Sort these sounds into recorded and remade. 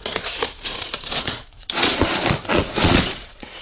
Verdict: remade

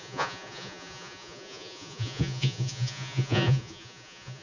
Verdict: remade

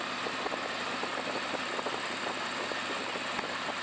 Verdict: recorded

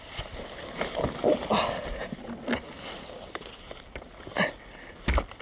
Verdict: recorded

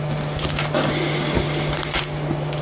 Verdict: recorded